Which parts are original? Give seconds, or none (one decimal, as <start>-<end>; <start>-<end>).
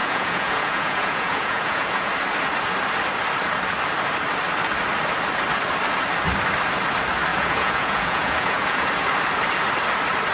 2.1-7.3; 8.9-10.3